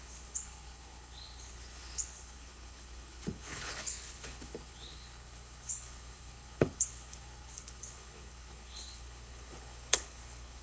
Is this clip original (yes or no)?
no